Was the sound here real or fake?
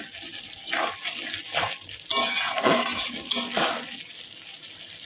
real